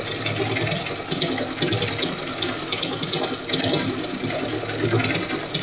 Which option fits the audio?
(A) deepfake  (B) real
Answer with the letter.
B